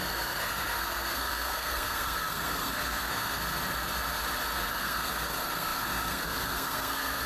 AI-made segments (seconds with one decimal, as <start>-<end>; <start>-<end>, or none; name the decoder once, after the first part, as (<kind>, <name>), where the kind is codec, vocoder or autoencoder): 0.0-3.4 (codec, SNAC); 4.7-7.3